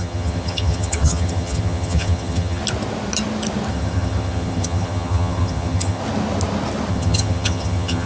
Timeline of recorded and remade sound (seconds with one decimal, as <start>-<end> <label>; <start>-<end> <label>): 0.0-2.6 remade; 2.6-3.7 recorded; 3.7-6.0 remade; 6.0-6.9 recorded; 6.9-8.1 remade